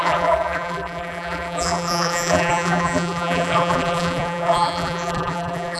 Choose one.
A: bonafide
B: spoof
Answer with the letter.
B